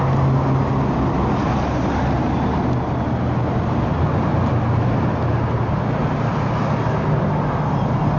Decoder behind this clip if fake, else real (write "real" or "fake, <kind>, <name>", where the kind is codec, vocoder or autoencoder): real